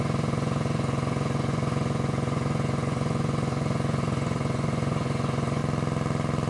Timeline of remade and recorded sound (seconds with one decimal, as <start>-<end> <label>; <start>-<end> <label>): 0.0-5.6 remade; 5.6-6.5 recorded